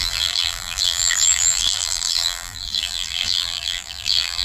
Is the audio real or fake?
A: fake